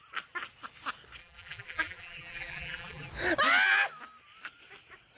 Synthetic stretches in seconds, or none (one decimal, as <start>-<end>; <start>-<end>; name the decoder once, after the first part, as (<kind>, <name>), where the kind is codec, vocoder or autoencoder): 1.2-3.1 (vocoder, BigVGAN v2)